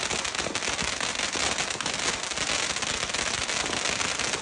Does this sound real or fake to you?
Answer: real